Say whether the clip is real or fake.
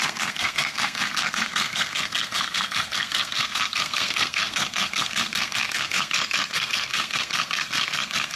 fake